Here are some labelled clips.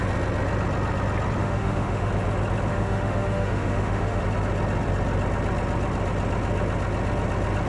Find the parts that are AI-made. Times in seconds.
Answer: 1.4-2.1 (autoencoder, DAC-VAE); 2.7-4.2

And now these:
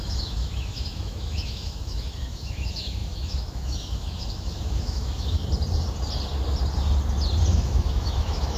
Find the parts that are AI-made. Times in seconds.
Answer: 0.0-5.4 (autoencoder, DAC-VAE); 7.5-8.6

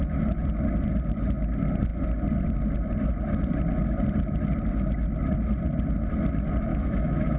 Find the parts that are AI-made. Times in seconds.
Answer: 6.7-7.4 (autoencoder, DAC-VAE)

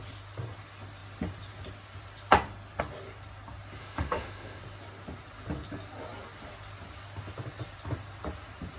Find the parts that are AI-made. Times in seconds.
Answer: 3.8-4.6 (autoencoder, DAC-VAE)

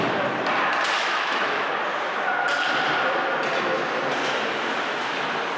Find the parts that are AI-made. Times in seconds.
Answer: 1.0-1.7 (autoencoder, DAC-VAE)

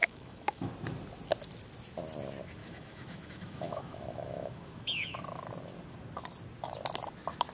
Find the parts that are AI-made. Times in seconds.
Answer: 0.0-0.7 (autoencoder, DAC-VAE); 2.6-5.2